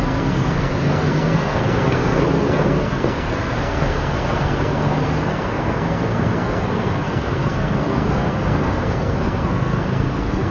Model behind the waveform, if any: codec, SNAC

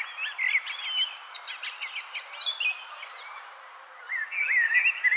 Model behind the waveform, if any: none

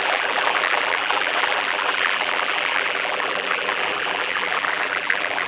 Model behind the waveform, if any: vocoder, BigVGAN v2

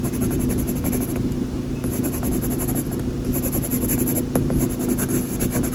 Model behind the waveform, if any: none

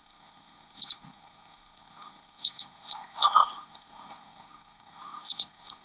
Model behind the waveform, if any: codec, SNAC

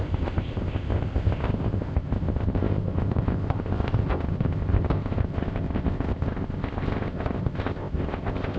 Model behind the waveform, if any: codec, ZipCodec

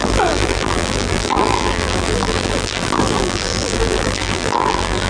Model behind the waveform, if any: vocoder, BigVGAN v2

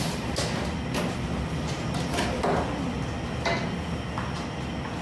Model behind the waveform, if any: none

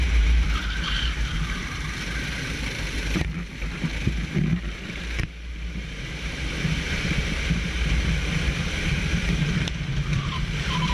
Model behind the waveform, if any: vocoder, BigVGAN v2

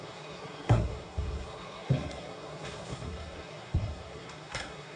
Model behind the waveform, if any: codec, SNAC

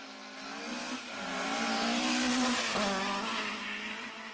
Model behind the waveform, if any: none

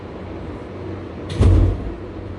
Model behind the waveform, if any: none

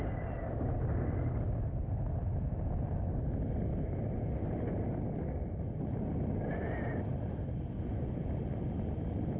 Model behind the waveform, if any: none